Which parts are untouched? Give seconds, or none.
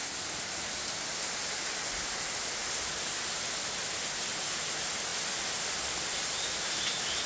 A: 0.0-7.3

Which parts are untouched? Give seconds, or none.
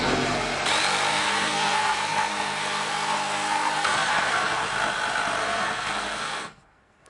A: 0.5-1.1; 4.6-5.4